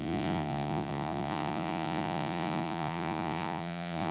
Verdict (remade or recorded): remade